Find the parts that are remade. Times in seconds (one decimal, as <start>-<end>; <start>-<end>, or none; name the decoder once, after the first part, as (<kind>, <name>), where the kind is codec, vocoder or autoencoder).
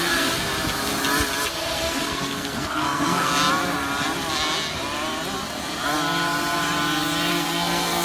0.0-0.5 (codec, SNAC); 1.5-3.3; 7.3-8.0